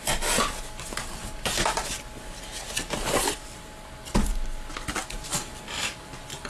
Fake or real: real